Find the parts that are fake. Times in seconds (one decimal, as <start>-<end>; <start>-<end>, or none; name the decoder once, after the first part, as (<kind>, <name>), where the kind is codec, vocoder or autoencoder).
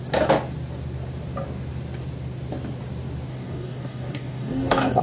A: 3.3-5.0 (codec, DAC)